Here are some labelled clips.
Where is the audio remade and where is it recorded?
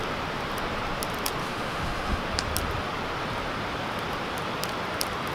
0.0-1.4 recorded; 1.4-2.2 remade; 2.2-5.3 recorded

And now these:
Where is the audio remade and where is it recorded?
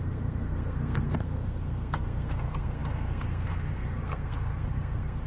0.0-5.3 remade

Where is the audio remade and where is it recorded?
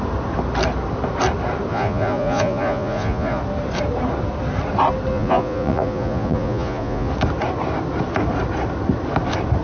0.0-1.7 recorded; 1.7-3.4 remade; 3.4-5.1 recorded; 5.1-7.1 remade; 7.1-9.6 recorded